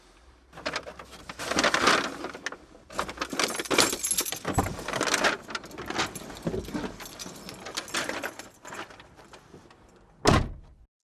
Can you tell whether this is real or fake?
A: real